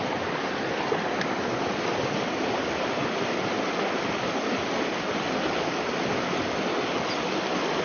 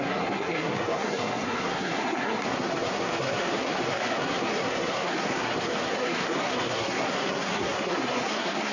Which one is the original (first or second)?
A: first